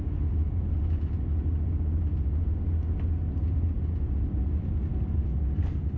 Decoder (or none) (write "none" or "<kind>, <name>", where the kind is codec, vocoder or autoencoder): none